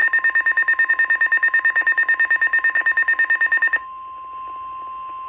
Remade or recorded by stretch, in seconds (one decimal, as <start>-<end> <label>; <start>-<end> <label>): 0.0-5.3 recorded

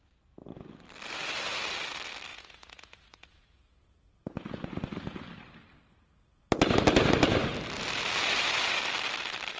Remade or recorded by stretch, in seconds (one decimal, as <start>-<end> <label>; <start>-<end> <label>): 0.0-2.3 recorded; 2.3-4.8 remade; 4.8-9.6 recorded

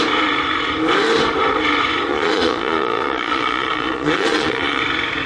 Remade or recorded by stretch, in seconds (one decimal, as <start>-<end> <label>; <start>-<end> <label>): 0.0-2.1 recorded; 2.1-4.8 remade; 4.8-5.3 recorded